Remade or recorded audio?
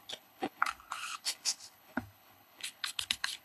remade